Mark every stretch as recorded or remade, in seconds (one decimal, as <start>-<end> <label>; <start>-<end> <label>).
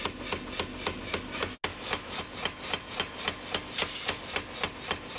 0.0-1.7 recorded; 1.7-2.2 remade; 2.2-5.2 recorded